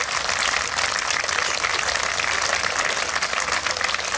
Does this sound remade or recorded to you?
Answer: recorded